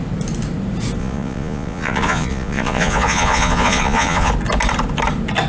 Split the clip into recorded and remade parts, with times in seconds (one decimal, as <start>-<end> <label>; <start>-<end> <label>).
0.0-1.0 recorded; 1.0-4.3 remade; 4.3-5.5 recorded